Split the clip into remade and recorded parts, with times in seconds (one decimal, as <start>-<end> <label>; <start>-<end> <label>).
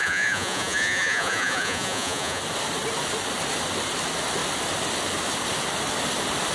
0.0-2.4 remade; 2.4-6.5 recorded